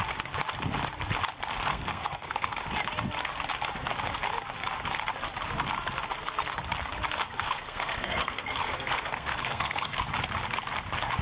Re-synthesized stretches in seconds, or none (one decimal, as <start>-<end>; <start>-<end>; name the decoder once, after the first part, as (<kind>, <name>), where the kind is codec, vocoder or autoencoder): 1.7-2.6 (codec, SNAC); 7.2-9.9